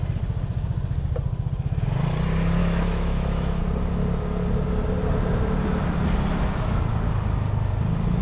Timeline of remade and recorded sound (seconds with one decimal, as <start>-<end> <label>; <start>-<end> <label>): 0.0-2.6 recorded; 2.6-3.6 remade; 3.6-8.2 recorded